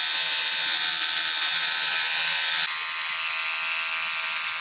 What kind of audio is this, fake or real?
real